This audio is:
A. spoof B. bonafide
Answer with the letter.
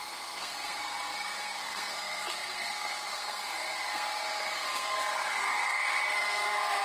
A